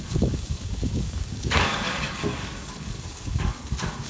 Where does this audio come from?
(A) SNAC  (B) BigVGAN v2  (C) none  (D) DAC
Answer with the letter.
D